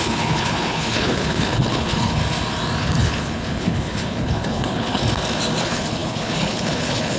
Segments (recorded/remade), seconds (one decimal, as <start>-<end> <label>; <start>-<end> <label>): 0.0-2.2 remade; 2.2-2.8 recorded; 2.8-5.0 remade; 5.0-5.6 recorded; 5.6-7.2 remade